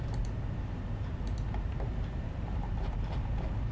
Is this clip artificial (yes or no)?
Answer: yes